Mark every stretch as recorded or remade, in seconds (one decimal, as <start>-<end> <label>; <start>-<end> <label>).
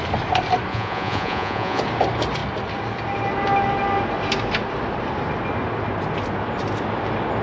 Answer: 0.0-0.7 recorded; 0.7-1.8 remade; 1.8-7.4 recorded